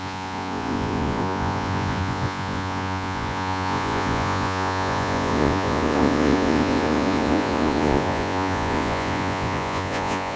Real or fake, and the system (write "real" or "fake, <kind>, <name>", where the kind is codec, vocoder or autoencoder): fake, vocoder, Vocos